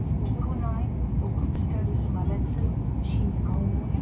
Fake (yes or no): no